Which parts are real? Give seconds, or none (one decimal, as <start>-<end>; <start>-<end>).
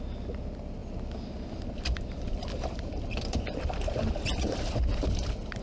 0.0-0.8; 4.2-5.6